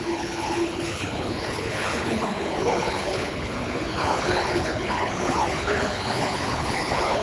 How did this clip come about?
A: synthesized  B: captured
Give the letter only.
A